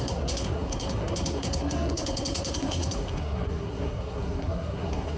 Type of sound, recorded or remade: remade